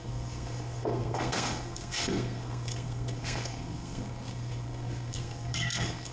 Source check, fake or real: fake